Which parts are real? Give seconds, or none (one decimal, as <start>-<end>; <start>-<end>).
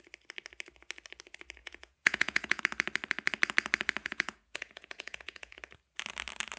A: 0.0-1.6; 2.6-4.0; 5.6-6.6